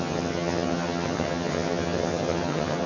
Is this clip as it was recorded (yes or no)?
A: no